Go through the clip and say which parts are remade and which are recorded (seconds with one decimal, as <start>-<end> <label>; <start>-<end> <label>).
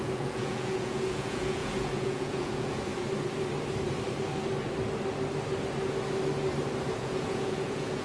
0.0-2.9 remade; 2.9-6.9 recorded; 6.9-8.0 remade